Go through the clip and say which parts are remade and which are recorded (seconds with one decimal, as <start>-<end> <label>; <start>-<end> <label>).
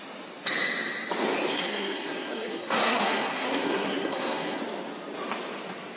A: 0.0-1.5 recorded; 1.5-4.6 remade; 4.6-6.0 recorded